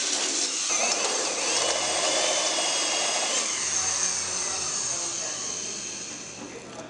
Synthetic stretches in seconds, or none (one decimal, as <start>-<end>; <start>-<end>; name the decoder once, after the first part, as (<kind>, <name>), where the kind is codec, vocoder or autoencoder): none